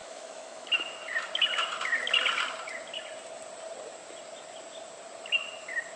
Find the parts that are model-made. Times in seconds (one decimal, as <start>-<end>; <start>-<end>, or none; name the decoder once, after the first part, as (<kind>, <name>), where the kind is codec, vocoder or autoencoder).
0.0-0.7 (autoencoder, DAC-VAE)

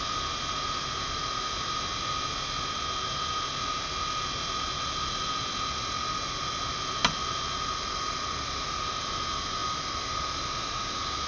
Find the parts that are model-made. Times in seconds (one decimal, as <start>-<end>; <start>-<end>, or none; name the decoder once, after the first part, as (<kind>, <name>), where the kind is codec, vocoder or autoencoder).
none

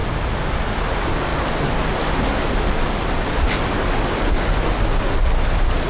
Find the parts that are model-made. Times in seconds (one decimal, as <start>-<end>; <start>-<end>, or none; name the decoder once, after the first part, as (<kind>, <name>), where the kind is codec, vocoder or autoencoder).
none

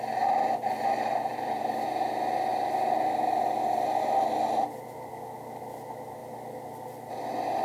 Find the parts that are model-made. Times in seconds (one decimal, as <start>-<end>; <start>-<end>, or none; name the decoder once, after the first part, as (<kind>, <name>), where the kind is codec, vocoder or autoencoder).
none

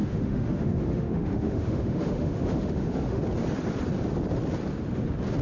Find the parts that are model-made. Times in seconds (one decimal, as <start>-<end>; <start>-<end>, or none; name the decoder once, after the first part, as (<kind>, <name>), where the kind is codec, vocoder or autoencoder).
0.0-3.2 (autoencoder, DAC-VAE)

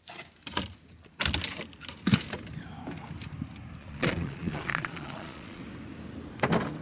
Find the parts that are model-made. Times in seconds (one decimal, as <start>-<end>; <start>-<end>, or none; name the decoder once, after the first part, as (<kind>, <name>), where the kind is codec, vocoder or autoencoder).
3.8-5.6 (vocoder, Vocos)